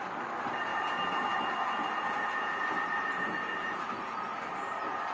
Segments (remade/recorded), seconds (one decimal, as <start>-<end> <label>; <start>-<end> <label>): 0.0-0.7 recorded; 0.7-3.8 remade; 3.8-5.1 recorded